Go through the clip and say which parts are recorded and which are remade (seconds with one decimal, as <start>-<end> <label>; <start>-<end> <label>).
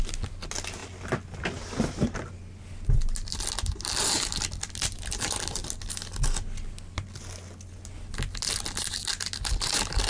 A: 0.0-10.1 recorded